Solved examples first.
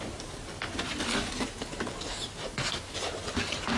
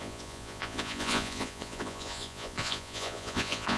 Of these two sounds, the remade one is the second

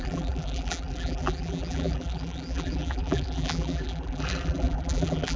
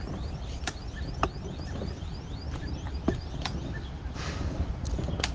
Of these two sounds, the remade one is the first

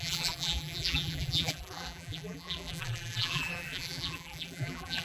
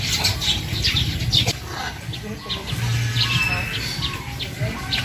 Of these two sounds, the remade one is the first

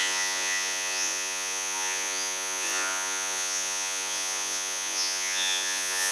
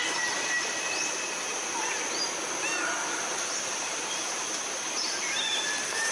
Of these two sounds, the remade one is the first